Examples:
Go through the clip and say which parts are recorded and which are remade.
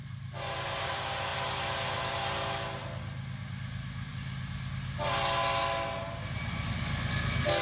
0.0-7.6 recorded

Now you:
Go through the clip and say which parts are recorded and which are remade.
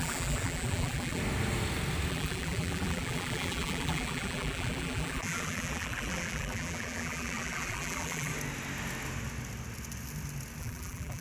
0.0-1.2 remade; 1.2-2.1 recorded; 2.1-8.3 remade; 8.3-10.6 recorded; 10.6-11.2 remade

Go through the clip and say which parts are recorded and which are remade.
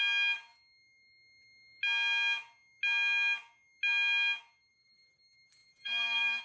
0.0-5.6 recorded; 5.6-6.4 remade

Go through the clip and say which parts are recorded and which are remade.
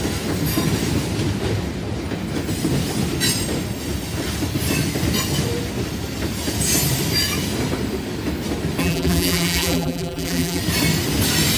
0.0-8.8 recorded; 8.8-10.6 remade; 10.6-11.6 recorded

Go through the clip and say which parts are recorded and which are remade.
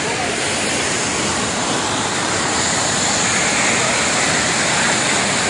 0.0-1.6 recorded; 1.6-2.8 remade; 2.8-5.5 recorded